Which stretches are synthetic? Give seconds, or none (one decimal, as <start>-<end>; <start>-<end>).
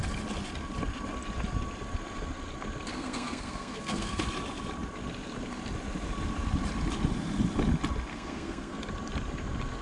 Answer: 2.9-4.2; 8.1-8.8